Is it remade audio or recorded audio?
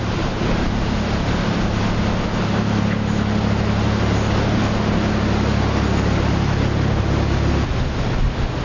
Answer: recorded